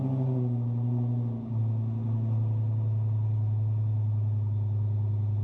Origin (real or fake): real